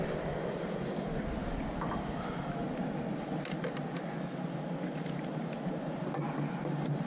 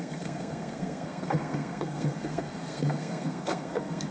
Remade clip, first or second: second